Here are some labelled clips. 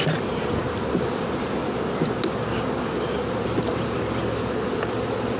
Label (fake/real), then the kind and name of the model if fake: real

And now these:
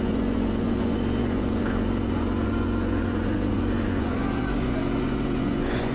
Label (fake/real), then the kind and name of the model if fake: fake, vocoder, Vocos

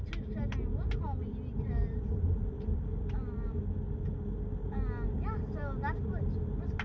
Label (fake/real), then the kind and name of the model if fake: real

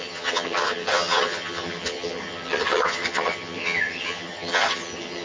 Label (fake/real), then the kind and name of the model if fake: fake, vocoder, HiFi-GAN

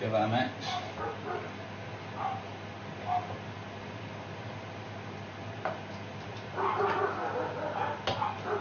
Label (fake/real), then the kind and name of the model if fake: real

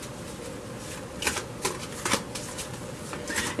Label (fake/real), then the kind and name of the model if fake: real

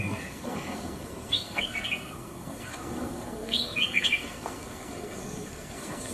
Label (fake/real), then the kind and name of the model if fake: fake, codec, SNAC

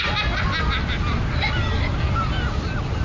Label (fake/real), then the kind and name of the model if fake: real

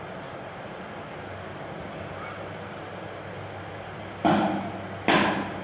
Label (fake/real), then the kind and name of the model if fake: real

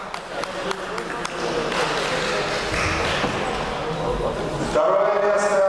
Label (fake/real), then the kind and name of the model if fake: real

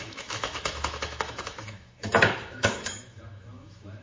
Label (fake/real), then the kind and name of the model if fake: fake, autoencoder, DAC-VAE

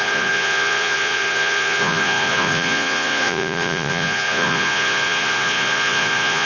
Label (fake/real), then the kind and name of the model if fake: fake, vocoder, Vocos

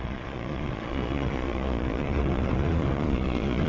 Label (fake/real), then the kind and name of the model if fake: fake, vocoder, Vocos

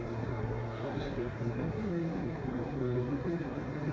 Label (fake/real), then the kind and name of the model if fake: fake, codec, SNAC